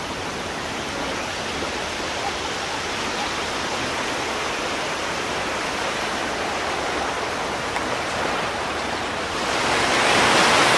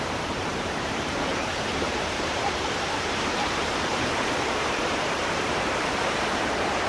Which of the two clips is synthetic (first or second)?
second